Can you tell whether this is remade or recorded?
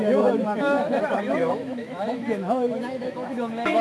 remade